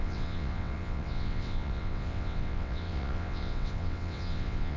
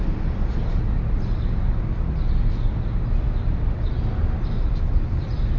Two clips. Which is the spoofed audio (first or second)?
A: first